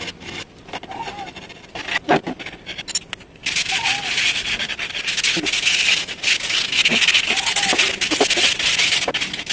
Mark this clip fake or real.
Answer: real